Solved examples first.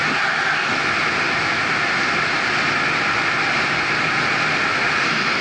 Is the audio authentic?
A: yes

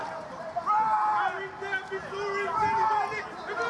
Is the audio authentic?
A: yes